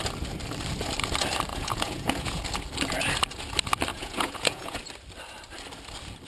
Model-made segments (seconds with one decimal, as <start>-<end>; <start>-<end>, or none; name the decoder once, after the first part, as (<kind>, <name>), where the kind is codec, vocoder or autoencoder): 1.5-2.4 (vocoder, Vocos); 3.9-4.8